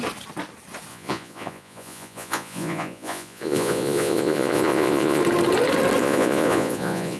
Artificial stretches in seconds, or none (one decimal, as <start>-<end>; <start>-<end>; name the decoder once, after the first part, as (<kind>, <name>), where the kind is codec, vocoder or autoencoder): 0.9-5.2 (vocoder, Vocos); 6.0-7.2